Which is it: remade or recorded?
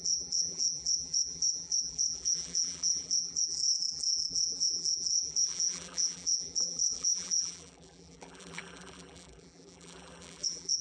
remade